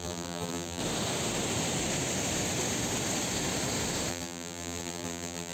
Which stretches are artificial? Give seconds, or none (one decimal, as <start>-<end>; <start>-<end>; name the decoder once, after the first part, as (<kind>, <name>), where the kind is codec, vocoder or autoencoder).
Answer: 0.0-0.8 (vocoder, BigVGAN v2); 4.1-5.5